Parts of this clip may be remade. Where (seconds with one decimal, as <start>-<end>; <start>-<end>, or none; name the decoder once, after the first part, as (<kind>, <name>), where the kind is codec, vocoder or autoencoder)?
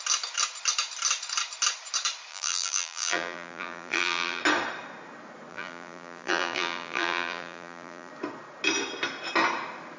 2.3-4.4 (vocoder, BigVGAN v2); 5.5-8.1